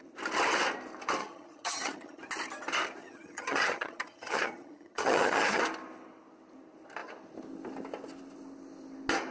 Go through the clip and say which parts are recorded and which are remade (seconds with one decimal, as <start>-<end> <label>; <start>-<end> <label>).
0.0-1.2 recorded; 1.2-2.2 remade; 2.2-3.0 recorded; 3.0-5.6 remade; 5.6-9.3 recorded